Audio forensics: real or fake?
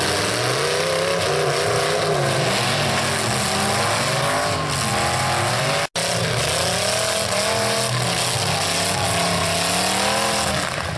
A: real